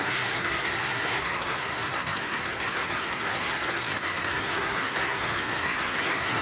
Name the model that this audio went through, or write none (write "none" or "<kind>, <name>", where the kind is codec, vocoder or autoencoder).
codec, SNAC